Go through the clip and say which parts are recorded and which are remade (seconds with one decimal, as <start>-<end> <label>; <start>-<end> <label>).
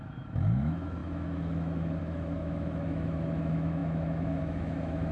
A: 0.0-5.1 remade